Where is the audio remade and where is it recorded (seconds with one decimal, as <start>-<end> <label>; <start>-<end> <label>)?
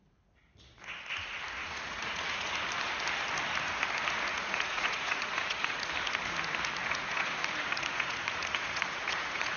0.0-1.6 recorded; 1.6-2.5 remade; 2.5-4.3 recorded; 4.3-5.9 remade; 5.9-6.8 recorded; 6.8-9.6 remade